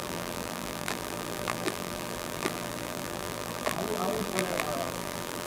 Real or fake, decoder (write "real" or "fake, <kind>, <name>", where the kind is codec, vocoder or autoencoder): fake, vocoder, BigVGAN v2